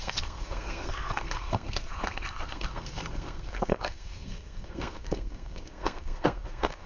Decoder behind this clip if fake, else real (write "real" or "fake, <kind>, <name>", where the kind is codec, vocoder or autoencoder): fake, codec, SNAC